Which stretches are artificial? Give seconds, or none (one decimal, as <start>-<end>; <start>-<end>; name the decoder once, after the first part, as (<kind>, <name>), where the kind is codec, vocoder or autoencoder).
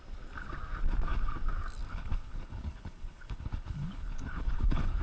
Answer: 1.9-5.0 (codec, HILCodec)